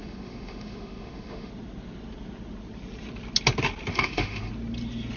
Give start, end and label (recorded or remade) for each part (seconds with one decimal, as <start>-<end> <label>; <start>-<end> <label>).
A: 0.0-1.5 remade; 1.5-3.9 recorded; 3.9-4.5 remade; 4.5-5.2 recorded